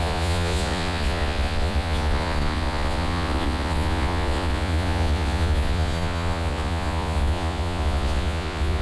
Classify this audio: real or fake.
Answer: fake